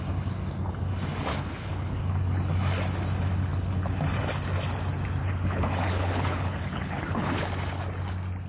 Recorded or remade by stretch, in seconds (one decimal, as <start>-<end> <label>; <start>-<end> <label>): 0.0-1.3 recorded; 1.3-2.0 remade; 2.0-5.2 recorded; 5.2-7.4 remade; 7.4-8.5 recorded

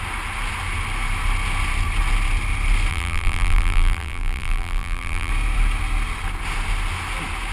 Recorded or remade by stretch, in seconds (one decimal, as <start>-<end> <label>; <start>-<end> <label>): 0.0-2.9 recorded; 2.9-5.3 remade; 5.3-7.5 recorded

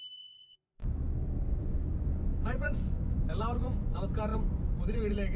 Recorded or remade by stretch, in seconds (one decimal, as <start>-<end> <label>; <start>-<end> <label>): 0.0-0.8 remade; 0.8-1.5 recorded; 1.5-5.4 remade

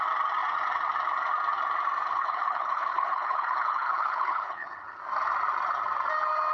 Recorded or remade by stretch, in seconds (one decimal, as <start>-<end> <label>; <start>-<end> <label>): 0.0-2.1 recorded; 2.1-5.0 remade; 5.0-6.5 recorded

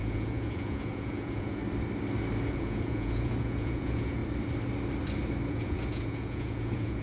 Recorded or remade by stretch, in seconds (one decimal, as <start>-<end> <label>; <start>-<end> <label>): 0.0-1.6 remade; 1.6-2.5 recorded; 2.5-4.2 remade; 4.2-5.5 recorded; 5.5-7.0 remade